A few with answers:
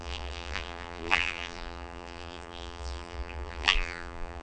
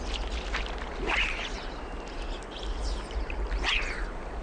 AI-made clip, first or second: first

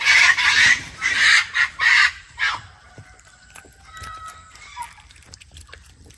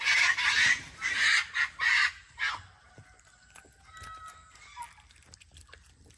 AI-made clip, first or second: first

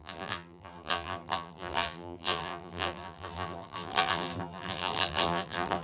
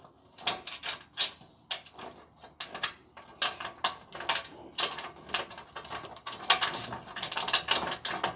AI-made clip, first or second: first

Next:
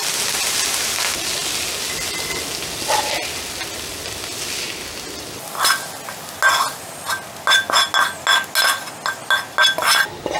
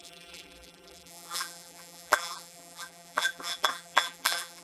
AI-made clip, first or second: second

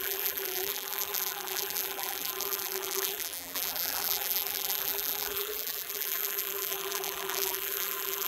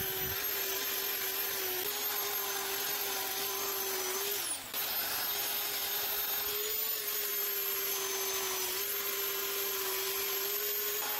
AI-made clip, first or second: first